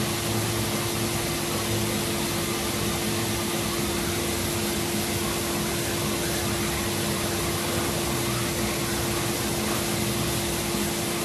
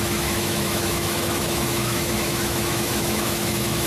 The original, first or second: first